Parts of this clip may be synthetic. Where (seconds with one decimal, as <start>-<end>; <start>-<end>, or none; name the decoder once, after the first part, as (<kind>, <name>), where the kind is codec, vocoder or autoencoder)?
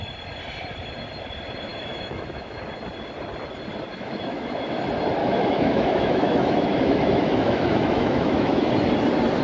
1.7-2.6 (autoencoder, DAC-VAE); 3.9-4.8; 5.2-8.7